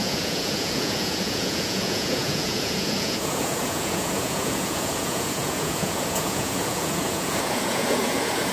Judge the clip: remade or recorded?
remade